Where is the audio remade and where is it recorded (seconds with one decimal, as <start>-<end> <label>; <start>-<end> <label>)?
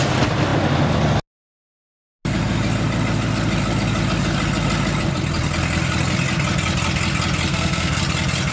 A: 0.0-7.5 recorded; 7.5-8.0 remade; 8.0-8.5 recorded